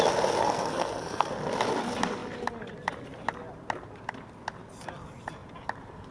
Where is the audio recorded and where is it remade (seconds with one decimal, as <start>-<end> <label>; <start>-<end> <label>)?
0.0-0.4 recorded; 0.4-1.3 remade; 1.3-6.1 recorded